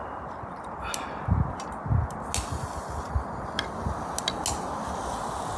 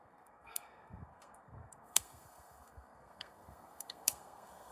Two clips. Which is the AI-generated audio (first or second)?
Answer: second